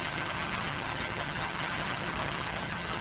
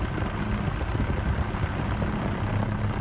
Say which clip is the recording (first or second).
second